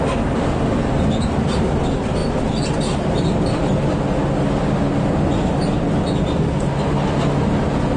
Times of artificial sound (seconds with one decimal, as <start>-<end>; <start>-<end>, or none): none